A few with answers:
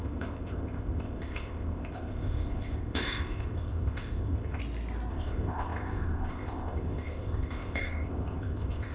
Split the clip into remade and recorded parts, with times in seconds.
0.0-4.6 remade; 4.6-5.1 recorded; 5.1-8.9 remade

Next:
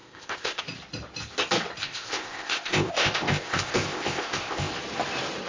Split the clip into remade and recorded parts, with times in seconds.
0.0-0.6 remade; 0.6-1.8 recorded; 1.8-4.7 remade; 4.7-5.5 recorded

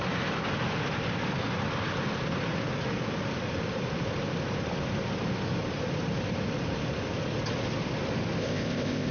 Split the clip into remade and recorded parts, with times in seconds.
0.0-8.4 recorded; 8.4-9.1 remade

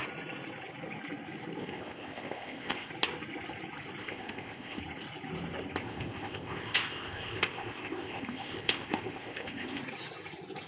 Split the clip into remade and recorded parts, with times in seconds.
0.0-1.6 recorded; 1.6-2.9 remade; 2.9-4.0 recorded; 4.0-4.8 remade; 4.8-5.8 recorded; 5.8-9.8 remade; 9.8-10.7 recorded

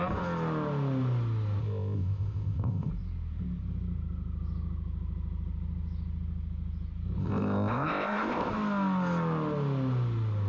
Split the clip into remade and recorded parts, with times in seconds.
0.0-1.6 recorded; 1.6-2.9 remade; 2.9-7.2 recorded; 7.2-8.5 remade; 8.5-10.5 recorded

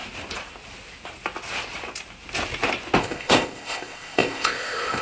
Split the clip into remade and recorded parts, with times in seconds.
0.0-3.0 recorded; 3.0-5.0 remade

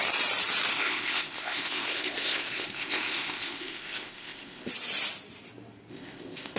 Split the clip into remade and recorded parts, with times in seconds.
0.0-0.7 recorded; 0.7-4.7 remade; 4.7-5.9 recorded; 5.9-6.6 remade